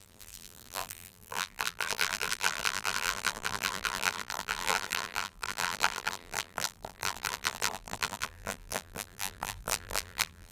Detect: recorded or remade remade